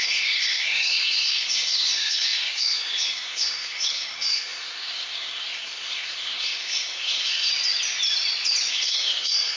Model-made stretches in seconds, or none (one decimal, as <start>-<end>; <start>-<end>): 0.0-7.5; 8.7-9.6